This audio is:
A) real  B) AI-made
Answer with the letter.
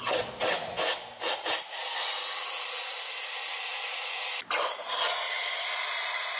A